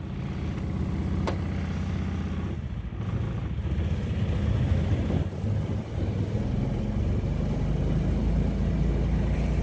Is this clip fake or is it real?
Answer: real